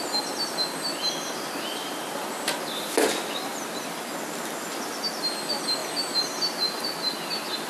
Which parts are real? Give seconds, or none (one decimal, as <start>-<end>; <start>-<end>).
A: 0.0-7.7